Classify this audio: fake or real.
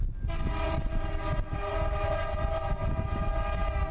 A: real